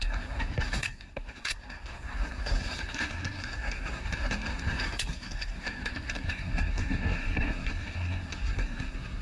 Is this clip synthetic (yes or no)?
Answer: yes